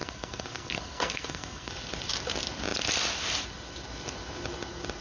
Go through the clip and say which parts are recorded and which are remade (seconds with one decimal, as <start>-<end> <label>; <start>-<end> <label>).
0.0-1.7 remade; 1.7-5.0 recorded